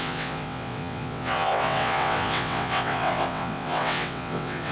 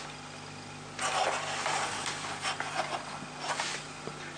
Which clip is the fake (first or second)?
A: first